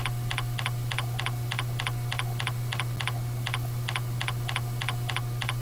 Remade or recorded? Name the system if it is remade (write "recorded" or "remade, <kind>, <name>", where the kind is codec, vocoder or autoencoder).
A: recorded